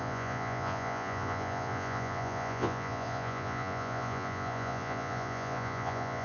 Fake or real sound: fake